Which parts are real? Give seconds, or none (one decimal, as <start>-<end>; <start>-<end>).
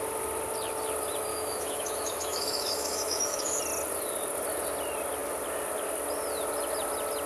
0.0-1.3; 3.6-7.3